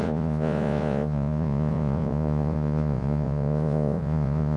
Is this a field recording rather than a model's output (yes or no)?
no